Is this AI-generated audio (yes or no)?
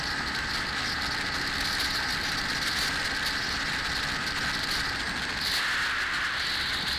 no